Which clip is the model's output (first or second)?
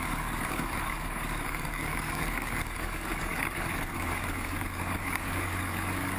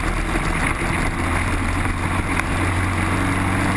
first